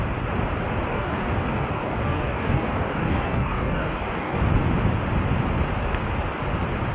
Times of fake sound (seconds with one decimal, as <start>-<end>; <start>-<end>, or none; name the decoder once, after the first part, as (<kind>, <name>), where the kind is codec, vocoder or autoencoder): 0.9-4.4 (codec, DAC)